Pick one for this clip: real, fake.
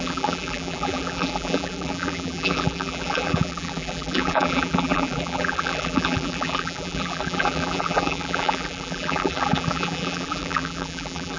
fake